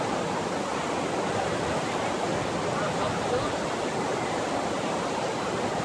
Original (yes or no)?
yes